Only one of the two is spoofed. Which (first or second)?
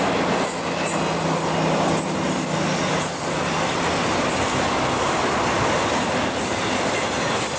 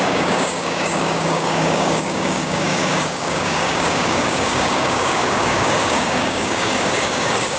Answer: second